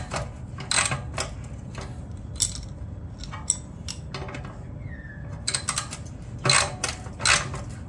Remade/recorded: recorded